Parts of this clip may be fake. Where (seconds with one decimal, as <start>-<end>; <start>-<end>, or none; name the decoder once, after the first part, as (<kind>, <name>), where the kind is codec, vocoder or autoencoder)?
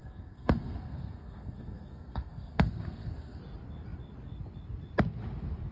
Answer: 0.0-3.4 (codec, SNAC)